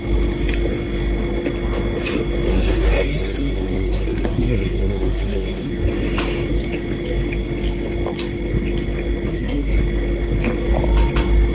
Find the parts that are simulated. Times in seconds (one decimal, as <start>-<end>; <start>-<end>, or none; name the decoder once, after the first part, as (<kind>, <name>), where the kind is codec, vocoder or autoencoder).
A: 2.5-5.7 (codec, SNAC); 9.3-9.8